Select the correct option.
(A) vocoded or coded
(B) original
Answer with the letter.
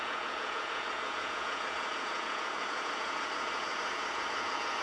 A